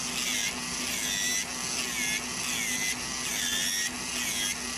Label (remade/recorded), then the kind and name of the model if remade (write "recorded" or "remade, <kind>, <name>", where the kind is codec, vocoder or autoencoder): recorded